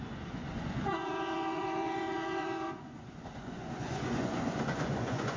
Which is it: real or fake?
fake